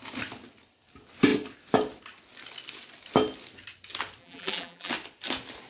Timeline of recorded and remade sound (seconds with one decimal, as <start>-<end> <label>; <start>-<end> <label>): 0.0-4.2 recorded; 4.2-4.9 remade; 4.9-5.7 recorded